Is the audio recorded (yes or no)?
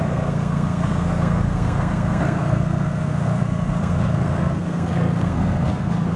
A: no